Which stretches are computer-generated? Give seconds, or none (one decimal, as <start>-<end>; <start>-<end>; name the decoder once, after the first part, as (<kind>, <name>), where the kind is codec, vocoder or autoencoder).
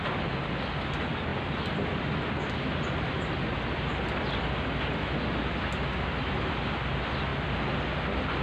none